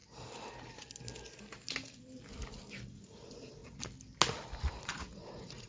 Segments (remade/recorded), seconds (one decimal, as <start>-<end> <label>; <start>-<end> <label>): 0.0-2.9 recorded; 2.9-3.6 remade; 3.6-4.8 recorded; 4.8-5.7 remade